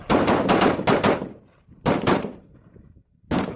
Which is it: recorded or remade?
remade